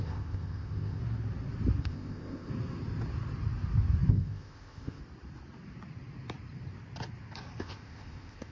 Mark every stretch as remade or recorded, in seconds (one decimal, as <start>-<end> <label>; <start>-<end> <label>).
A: 0.0-1.0 remade; 1.0-1.8 recorded; 1.8-2.5 remade; 2.5-4.1 recorded; 4.1-5.0 remade; 5.0-7.6 recorded; 7.6-8.5 remade